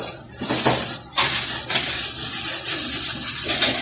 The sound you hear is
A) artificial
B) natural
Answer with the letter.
B